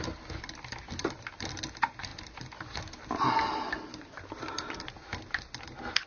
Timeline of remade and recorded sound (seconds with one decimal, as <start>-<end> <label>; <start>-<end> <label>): 0.0-6.1 recorded